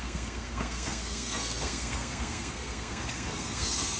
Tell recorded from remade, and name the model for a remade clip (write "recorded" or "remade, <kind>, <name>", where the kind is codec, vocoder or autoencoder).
remade, codec, SNAC